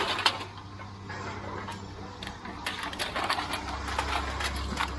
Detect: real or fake real